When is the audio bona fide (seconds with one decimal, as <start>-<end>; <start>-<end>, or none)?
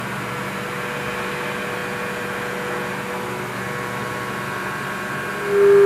0.0-5.9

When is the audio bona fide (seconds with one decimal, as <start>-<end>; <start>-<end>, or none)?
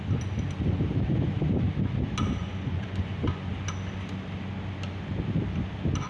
0.0-2.4; 3.5-6.1